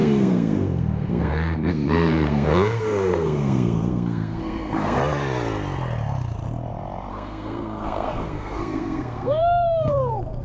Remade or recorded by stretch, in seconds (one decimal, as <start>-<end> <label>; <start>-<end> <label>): 0.0-5.0 remade; 5.0-7.1 recorded; 7.1-10.4 remade